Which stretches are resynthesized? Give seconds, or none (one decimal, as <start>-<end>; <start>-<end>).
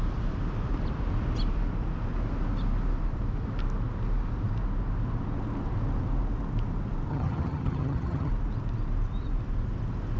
7.1-8.3